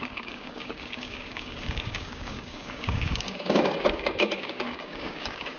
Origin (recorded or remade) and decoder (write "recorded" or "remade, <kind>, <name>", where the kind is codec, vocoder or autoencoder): remade, codec, DAC